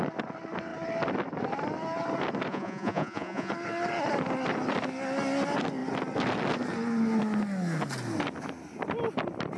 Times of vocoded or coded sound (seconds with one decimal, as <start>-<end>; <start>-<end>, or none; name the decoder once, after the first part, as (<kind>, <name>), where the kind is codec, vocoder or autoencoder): 2.5-3.5 (vocoder, Vocos)